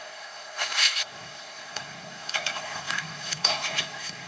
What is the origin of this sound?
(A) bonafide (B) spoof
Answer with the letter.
B